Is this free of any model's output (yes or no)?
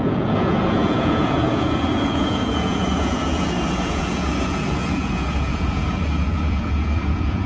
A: no